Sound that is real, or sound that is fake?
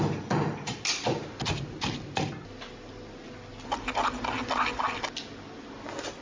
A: real